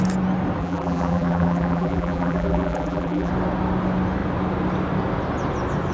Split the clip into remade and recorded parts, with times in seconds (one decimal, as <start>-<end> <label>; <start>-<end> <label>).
0.0-0.6 recorded; 0.6-3.3 remade; 3.3-5.9 recorded